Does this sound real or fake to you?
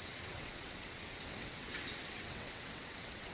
fake